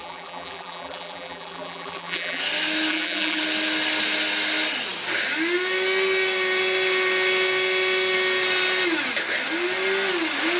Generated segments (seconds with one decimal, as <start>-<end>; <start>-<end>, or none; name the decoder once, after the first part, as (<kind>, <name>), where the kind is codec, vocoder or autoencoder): 0.0-2.4 (vocoder, BigVGAN v2); 2.9-3.4